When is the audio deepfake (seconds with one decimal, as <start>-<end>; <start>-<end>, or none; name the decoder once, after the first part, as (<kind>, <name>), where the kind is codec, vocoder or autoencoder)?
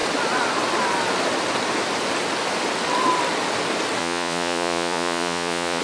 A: 4.0-5.8 (vocoder, Vocos)